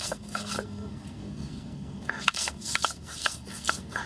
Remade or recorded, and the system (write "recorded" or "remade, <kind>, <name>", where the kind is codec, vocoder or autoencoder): remade, codec, SNAC